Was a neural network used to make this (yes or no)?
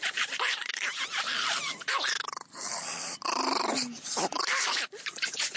yes